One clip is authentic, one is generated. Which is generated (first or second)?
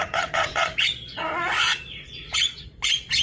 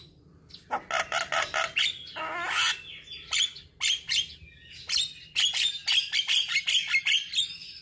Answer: first